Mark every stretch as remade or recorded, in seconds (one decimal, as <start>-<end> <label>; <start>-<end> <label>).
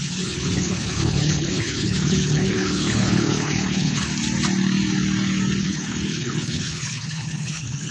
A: 0.0-4.1 remade; 4.1-5.6 recorded; 5.6-7.9 remade